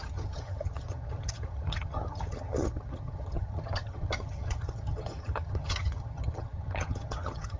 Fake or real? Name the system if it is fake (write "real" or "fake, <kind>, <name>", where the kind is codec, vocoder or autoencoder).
fake, vocoder, HiFi-GAN